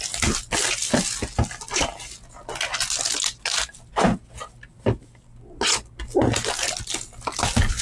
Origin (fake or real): real